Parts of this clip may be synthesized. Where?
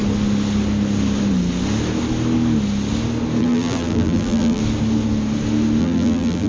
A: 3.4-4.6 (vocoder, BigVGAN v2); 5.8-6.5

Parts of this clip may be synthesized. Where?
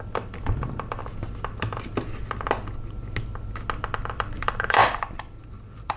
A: 0.0-1.0 (vocoder, BigVGAN v2); 4.1-6.0